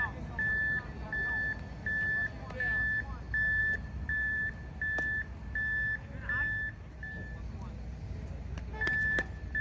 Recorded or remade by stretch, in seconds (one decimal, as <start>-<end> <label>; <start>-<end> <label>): 0.0-3.6 recorded; 3.6-4.5 remade; 4.5-9.6 recorded